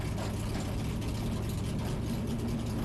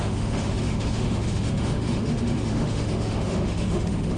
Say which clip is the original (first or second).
first